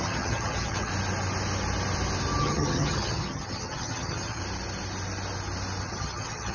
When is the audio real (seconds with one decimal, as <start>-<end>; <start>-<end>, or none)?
0.9-2.4; 4.4-5.8